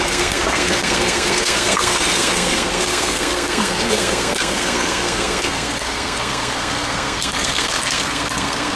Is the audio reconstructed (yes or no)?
yes